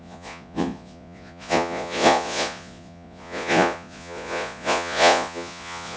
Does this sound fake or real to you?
fake